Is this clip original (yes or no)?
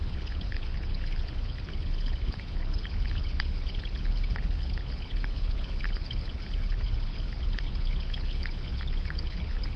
no